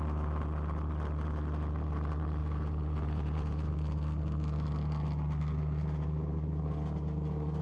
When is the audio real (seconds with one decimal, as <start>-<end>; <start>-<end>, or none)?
0.0-2.4; 3.7-7.6